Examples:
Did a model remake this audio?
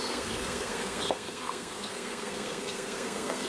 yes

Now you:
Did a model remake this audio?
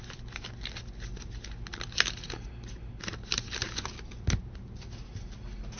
no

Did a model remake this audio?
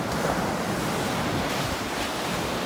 no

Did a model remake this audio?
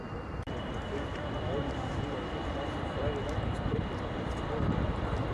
no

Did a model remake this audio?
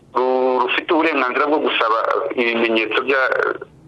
no